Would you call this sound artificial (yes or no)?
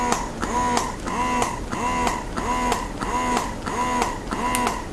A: no